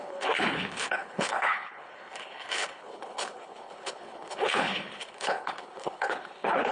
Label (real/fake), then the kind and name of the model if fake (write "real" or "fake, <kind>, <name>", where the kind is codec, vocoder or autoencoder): fake, codec, HILCodec